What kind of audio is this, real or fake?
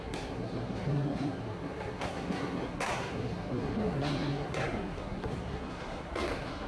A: fake